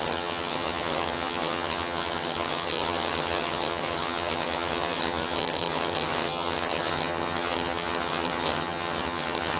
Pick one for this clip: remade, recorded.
remade